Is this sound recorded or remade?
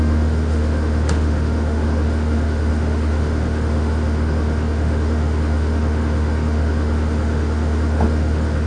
remade